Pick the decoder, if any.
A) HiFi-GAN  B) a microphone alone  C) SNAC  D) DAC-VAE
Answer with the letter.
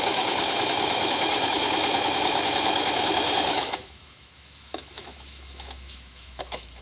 D